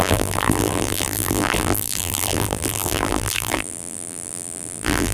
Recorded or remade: remade